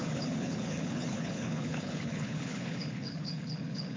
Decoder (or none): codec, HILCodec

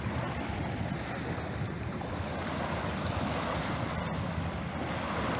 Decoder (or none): none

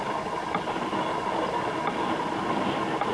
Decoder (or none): none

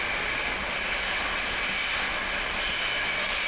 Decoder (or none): none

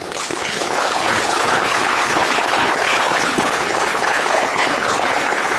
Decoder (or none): codec, HILCodec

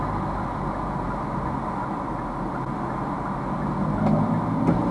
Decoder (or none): none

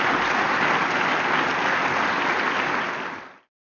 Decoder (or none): none